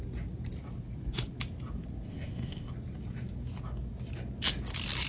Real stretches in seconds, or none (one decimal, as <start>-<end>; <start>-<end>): 0.0-2.1; 2.7-5.1